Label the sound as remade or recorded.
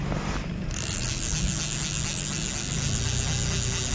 recorded